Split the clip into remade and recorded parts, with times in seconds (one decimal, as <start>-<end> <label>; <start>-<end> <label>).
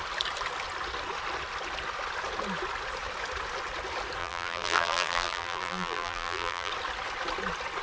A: 0.0-4.2 recorded; 4.2-6.7 remade; 6.7-7.8 recorded